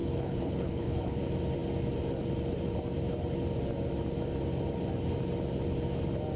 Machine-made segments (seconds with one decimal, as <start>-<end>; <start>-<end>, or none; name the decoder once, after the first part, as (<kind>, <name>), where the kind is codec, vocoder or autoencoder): 0.0-1.2 (codec, HILCodec)